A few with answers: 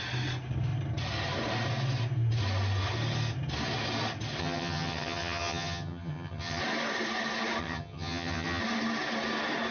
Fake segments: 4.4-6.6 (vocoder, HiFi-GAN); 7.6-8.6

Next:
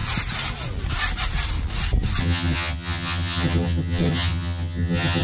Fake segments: 2.2-5.2 (vocoder, HiFi-GAN)

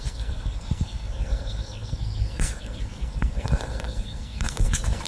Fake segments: 0.0-5.1 (codec, SNAC)

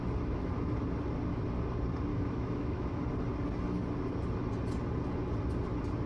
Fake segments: 2.1-3.0 (autoencoder, DAC-VAE)